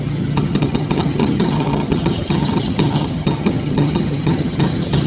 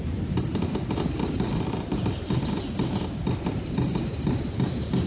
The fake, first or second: first